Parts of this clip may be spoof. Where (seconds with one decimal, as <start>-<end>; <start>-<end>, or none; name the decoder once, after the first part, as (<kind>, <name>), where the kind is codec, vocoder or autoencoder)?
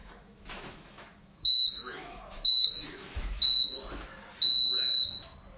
0.0-3.4 (autoencoder, DAC-VAE)